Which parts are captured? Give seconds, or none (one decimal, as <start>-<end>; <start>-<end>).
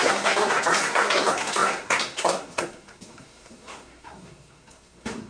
none